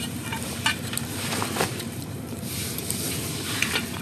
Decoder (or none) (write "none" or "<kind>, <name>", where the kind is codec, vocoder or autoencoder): vocoder, BigVGAN v2